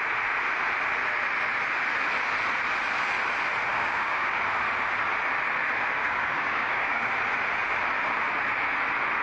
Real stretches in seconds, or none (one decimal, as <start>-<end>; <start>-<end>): 0.0-3.7; 4.4-6.0; 7.1-9.2